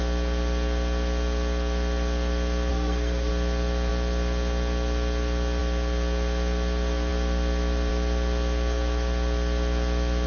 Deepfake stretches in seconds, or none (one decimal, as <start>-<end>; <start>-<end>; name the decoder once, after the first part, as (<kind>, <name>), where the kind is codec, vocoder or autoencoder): 2.7-3.3 (codec, SNAC)